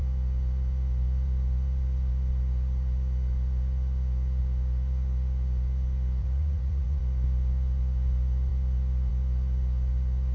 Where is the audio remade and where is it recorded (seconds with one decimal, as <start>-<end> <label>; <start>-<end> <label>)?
0.0-6.2 recorded; 6.2-7.0 remade; 7.0-10.3 recorded